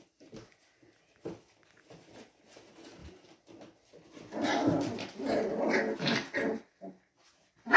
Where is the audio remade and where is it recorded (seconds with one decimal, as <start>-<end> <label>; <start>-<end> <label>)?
0.0-7.8 recorded